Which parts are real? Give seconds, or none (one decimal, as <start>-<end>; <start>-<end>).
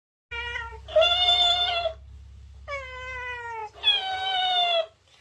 0.0-5.2